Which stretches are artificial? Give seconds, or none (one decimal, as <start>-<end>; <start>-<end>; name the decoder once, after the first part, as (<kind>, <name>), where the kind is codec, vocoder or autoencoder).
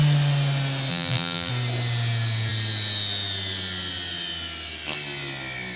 0.9-1.5 (vocoder, BigVGAN v2)